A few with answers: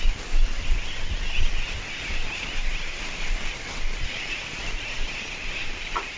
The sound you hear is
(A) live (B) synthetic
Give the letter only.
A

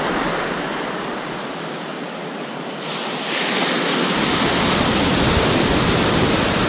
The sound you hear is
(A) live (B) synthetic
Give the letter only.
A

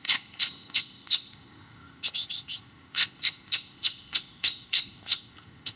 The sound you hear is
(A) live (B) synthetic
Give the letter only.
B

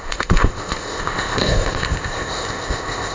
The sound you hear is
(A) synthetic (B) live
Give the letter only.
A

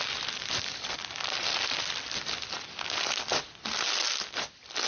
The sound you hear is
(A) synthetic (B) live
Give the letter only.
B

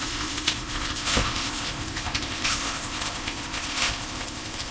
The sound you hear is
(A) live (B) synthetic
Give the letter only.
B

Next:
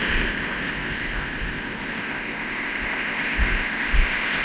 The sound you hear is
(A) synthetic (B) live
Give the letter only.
A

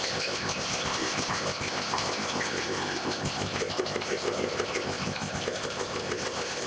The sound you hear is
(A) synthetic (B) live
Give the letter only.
A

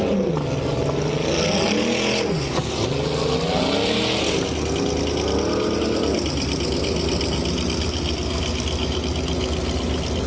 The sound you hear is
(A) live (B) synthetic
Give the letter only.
A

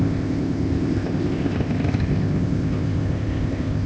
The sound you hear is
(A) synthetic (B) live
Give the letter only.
A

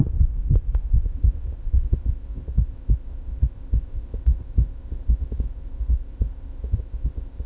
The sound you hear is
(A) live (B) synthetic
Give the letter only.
B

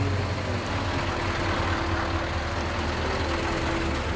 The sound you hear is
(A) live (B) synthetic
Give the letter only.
A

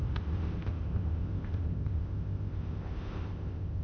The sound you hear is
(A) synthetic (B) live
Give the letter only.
A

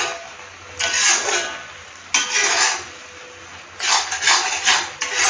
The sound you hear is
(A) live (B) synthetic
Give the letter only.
A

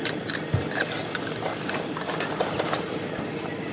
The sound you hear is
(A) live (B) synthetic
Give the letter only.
A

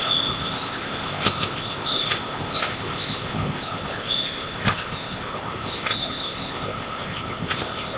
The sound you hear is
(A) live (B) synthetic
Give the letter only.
B